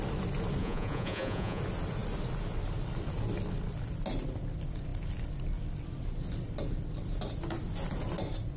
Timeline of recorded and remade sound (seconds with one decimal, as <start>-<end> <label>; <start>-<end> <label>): 0.0-0.6 recorded; 0.6-1.6 remade; 1.6-8.6 recorded